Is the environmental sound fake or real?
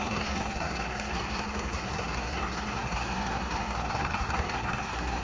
fake